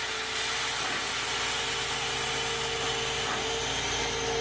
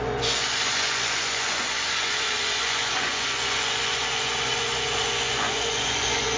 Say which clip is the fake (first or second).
second